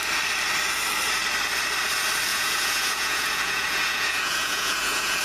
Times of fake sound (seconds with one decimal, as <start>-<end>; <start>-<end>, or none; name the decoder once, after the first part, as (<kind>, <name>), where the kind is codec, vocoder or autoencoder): 2.3-5.2 (vocoder, Vocos)